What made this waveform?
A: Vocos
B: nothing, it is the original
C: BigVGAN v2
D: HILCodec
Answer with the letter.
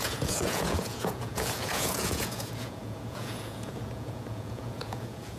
A